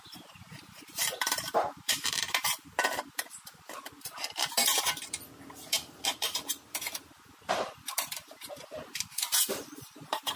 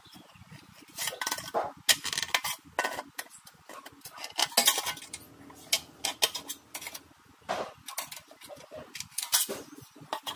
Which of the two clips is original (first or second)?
second